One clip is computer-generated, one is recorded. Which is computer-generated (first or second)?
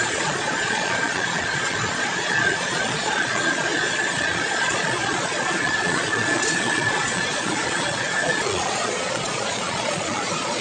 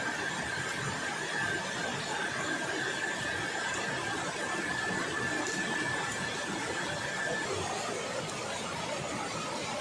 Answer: first